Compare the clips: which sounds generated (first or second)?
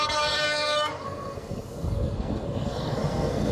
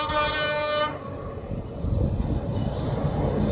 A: first